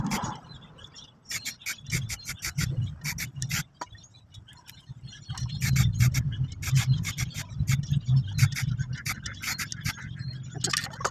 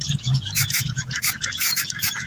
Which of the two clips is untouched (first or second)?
first